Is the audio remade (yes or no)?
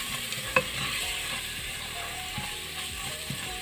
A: yes